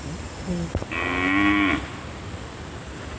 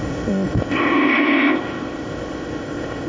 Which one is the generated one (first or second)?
second